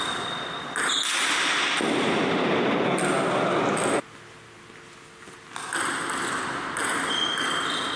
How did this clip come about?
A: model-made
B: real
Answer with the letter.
B